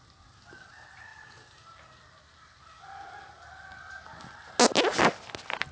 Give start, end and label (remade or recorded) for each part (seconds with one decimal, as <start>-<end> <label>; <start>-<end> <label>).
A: 0.0-5.7 recorded